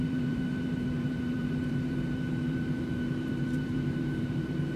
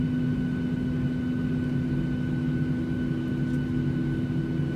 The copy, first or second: first